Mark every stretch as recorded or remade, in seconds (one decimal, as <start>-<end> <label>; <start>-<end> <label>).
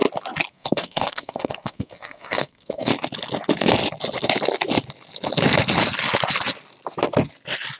0.0-0.5 recorded; 0.5-2.9 remade; 2.9-7.8 recorded